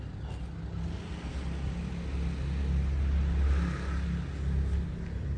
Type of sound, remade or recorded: recorded